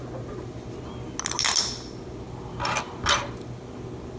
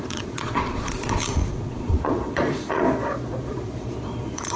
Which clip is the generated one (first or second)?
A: second